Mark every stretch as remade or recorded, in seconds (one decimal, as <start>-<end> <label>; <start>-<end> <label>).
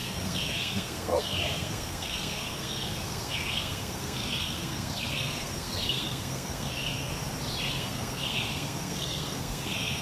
0.0-7.1 remade; 7.1-7.7 recorded; 7.7-10.0 remade